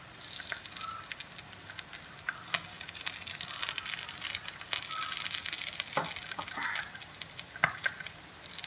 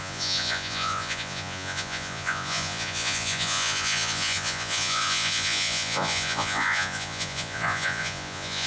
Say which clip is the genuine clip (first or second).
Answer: first